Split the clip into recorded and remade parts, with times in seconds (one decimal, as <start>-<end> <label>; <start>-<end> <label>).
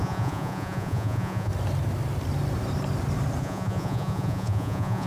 0.0-1.5 remade; 1.5-3.4 recorded; 3.4-5.1 remade